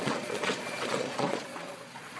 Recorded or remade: remade